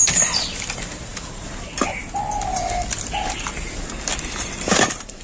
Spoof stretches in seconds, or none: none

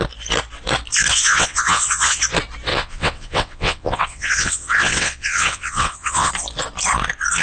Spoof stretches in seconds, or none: 1.1-2.2 (vocoder, WaveNeXt); 2.7-6.3

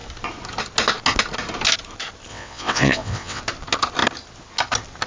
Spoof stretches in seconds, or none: 2.3-3.4 (vocoder, WaveNeXt)

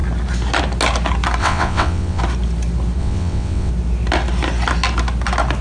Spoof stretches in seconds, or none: 1.4-2.2 (vocoder, WaveNeXt); 3.0-3.7

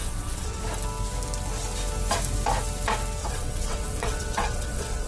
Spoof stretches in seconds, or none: 0.0-0.6 (vocoder, WaveNeXt); 3.2-5.1

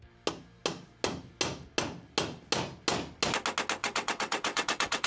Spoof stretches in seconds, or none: 3.8-5.1 (vocoder, WaveNeXt)